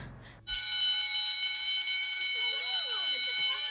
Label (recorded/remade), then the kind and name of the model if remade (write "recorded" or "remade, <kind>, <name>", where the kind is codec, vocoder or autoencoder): recorded